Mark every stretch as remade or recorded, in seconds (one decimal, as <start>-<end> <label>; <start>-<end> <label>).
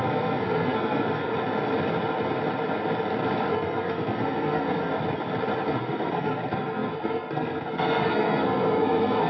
0.0-1.3 remade; 1.3-3.5 recorded; 3.5-4.9 remade; 4.9-5.7 recorded; 5.7-9.3 remade